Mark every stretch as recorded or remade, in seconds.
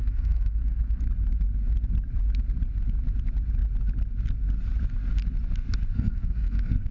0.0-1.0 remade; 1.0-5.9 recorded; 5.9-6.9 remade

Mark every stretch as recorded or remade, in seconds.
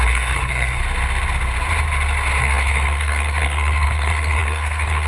0.0-0.8 remade; 0.8-2.4 recorded; 2.4-5.1 remade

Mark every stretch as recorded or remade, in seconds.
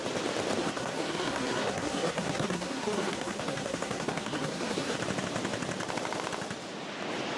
0.0-0.6 recorded; 0.6-5.0 remade; 5.0-7.4 recorded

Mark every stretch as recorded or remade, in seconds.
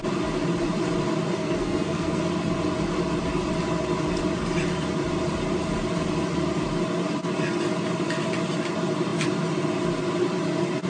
0.0-1.4 recorded; 1.4-2.2 remade; 2.2-10.9 recorded